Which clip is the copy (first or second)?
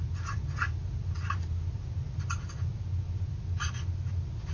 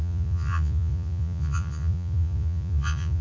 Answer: second